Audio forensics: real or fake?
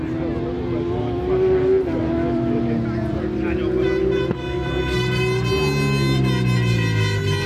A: real